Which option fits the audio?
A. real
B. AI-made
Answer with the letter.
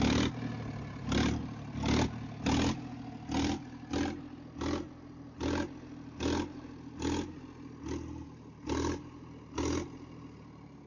A